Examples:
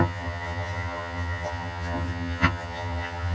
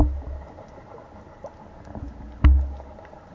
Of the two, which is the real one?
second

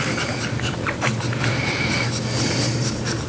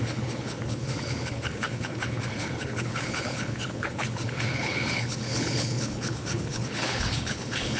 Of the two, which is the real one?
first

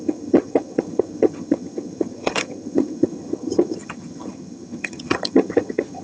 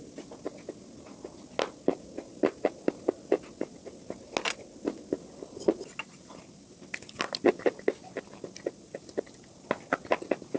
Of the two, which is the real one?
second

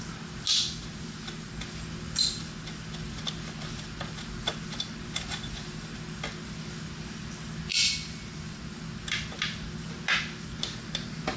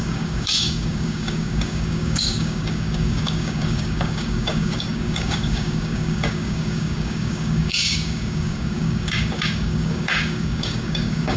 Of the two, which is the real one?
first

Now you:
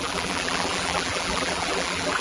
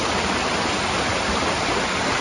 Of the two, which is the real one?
second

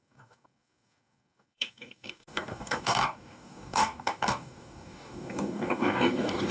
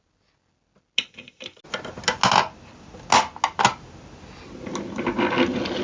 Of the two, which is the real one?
second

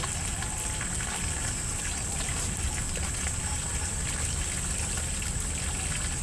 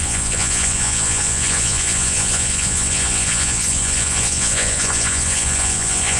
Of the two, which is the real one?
first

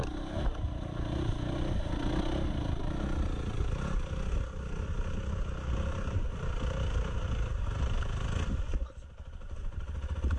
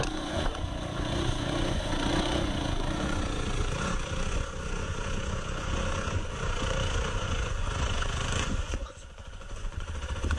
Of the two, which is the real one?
first